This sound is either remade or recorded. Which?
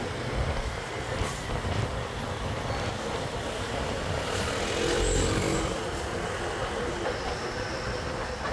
recorded